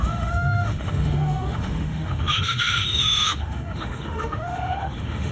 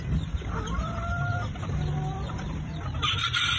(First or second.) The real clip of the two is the second